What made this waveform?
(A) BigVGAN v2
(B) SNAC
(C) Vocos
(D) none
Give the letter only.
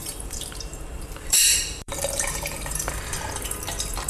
A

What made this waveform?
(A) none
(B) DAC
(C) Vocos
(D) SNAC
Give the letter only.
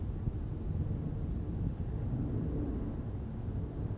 A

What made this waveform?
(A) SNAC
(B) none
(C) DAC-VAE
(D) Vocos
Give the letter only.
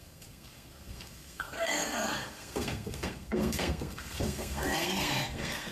A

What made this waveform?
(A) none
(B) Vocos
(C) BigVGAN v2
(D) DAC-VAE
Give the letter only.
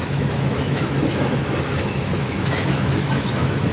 D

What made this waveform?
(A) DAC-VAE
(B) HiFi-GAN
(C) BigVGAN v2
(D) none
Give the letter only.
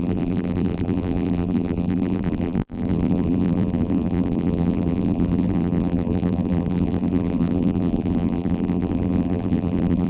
C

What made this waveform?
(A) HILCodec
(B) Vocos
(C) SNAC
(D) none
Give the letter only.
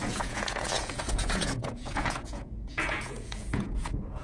B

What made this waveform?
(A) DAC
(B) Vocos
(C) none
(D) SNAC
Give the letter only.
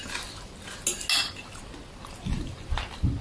C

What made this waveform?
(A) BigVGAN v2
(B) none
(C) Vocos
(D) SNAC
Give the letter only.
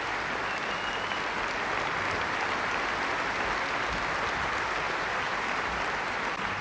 B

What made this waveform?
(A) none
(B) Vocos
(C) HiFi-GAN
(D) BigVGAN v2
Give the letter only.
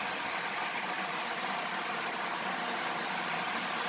D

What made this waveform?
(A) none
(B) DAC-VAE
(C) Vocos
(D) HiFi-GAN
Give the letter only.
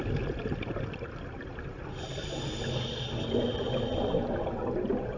A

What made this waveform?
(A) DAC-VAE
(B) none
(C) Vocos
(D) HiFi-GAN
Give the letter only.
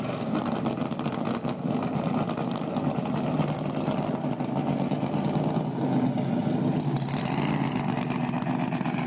B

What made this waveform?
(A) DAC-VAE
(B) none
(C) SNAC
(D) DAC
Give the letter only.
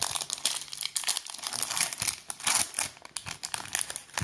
B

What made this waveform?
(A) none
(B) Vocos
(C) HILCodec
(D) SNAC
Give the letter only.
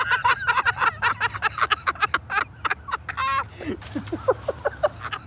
A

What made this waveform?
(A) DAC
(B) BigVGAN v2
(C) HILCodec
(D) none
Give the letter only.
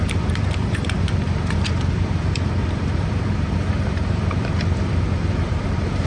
B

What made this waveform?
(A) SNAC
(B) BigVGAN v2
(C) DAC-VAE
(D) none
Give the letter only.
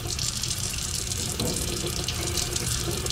B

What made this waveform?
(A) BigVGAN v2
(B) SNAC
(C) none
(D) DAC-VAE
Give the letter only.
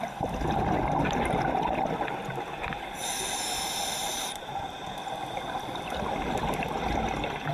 C